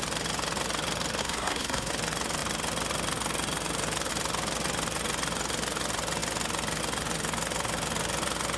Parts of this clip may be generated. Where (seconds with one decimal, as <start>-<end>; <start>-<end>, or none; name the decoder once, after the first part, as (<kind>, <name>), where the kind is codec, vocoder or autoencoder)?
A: 1.2-1.9 (codec, SNAC)